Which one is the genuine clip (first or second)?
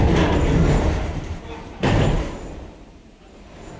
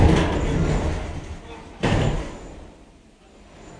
second